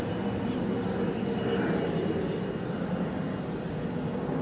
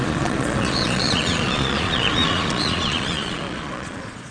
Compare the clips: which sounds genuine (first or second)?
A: first